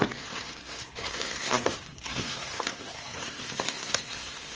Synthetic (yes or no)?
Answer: yes